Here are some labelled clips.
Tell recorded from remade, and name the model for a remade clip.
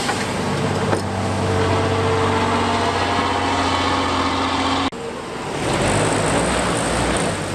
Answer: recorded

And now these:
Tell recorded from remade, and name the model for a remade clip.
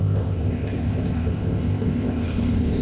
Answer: remade, codec, ZipCodec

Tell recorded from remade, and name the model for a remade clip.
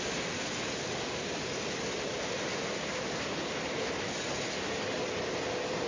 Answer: recorded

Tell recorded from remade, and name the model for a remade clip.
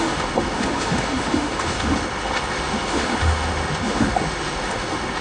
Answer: remade, autoencoder, DAC-VAE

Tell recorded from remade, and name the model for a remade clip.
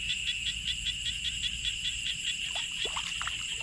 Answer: remade, vocoder, BigVGAN v2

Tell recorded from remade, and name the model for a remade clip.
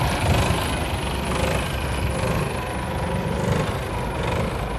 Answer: recorded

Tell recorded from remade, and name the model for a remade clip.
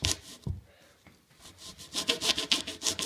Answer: recorded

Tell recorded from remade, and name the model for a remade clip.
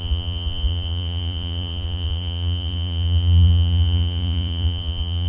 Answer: remade, vocoder, Vocos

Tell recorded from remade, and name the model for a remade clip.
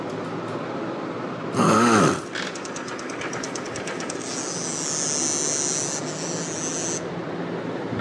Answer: recorded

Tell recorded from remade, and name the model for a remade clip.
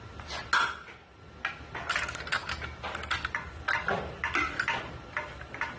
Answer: recorded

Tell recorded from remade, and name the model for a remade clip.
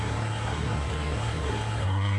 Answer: remade, codec, SNAC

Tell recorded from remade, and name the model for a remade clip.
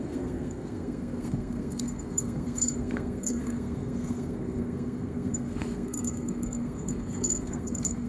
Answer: remade, codec, SNAC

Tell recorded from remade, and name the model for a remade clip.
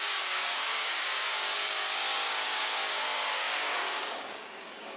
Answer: remade, codec, DAC